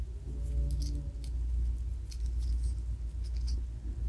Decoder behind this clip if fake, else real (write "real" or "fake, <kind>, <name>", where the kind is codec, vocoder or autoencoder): real